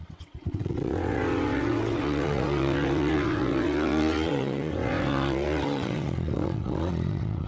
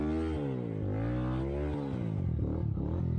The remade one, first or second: first